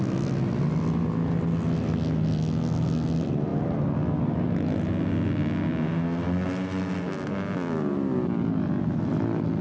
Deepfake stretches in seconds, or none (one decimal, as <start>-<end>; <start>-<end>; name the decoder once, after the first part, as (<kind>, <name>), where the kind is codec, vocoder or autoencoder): none